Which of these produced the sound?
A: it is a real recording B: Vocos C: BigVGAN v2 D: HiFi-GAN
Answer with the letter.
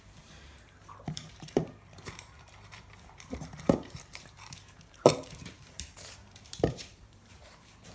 C